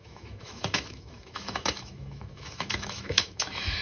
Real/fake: fake